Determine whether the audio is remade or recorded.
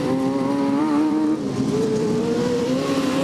remade